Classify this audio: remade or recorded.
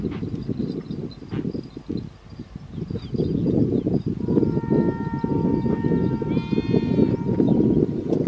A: recorded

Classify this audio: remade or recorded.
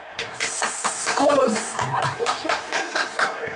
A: remade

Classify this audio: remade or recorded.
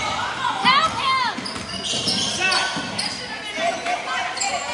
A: recorded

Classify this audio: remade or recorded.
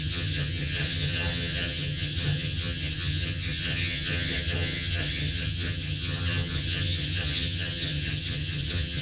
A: remade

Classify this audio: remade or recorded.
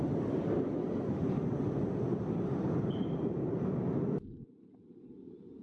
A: recorded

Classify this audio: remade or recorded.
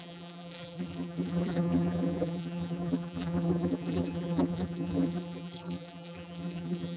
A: remade